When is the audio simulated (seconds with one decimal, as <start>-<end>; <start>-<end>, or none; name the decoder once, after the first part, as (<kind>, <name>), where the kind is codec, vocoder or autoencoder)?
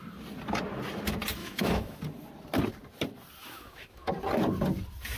1.4-2.0 (autoencoder, DAC-VAE); 3.4-4.1